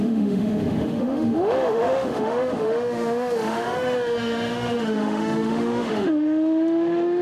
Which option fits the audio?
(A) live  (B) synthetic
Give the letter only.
B